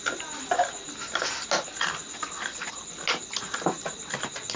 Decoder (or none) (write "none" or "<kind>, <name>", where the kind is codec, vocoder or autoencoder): none